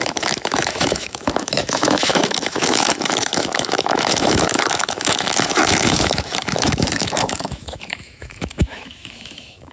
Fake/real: fake